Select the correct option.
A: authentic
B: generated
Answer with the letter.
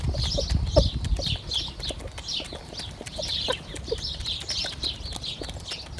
A